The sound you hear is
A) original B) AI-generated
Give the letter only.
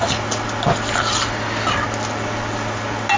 A